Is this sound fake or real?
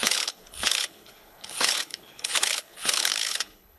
fake